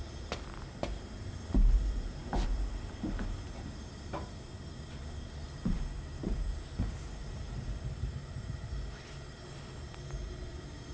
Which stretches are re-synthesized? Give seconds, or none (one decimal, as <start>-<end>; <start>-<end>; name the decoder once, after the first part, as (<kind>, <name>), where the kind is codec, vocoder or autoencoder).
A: 8.2-8.7 (vocoder, BigVGAN v2)